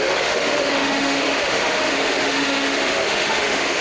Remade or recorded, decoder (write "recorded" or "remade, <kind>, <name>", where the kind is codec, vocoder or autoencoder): remade, autoencoder, DAC-VAE